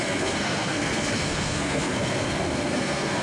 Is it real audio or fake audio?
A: fake